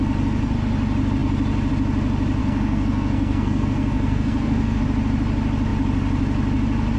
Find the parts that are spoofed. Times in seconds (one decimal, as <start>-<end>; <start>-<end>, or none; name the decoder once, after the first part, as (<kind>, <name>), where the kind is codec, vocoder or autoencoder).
2.4-4.8 (codec, SNAC)